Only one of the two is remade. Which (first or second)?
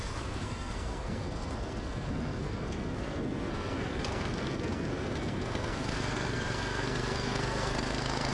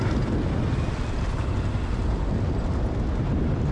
first